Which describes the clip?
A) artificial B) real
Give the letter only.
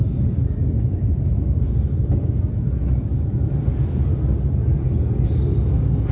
B